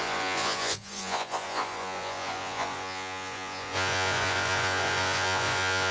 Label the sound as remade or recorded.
remade